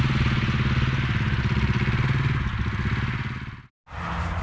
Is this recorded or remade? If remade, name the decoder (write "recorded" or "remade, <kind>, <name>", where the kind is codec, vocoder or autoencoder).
recorded